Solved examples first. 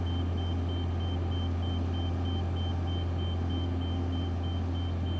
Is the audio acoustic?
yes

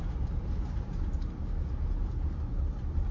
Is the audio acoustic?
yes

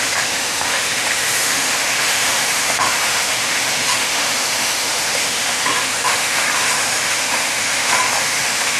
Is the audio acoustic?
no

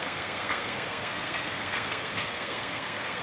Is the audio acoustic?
no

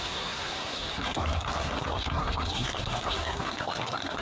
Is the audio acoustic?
no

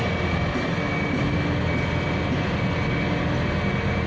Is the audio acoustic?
yes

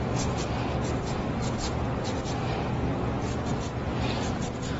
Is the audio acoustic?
yes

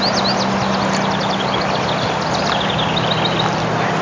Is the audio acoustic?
yes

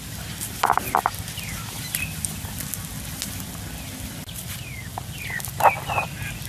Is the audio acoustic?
yes